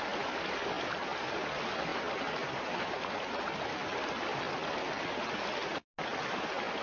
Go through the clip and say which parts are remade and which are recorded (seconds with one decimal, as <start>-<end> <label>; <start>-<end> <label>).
0.0-6.8 recorded